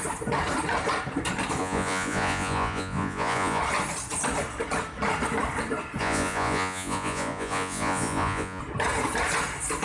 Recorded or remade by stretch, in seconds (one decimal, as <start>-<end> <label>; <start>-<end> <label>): 0.0-1.6 recorded; 1.6-3.6 remade; 3.6-6.0 recorded; 6.0-8.6 remade; 8.6-9.8 recorded